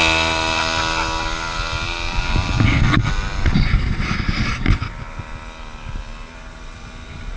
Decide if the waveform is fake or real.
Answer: real